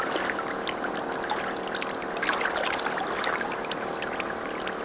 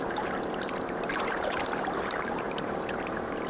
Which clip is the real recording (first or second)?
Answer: first